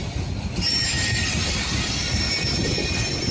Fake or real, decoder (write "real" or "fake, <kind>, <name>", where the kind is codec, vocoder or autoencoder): real